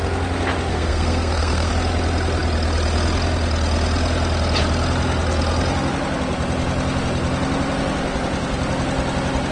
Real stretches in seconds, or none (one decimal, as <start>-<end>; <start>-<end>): 0.0-0.7; 1.7-9.5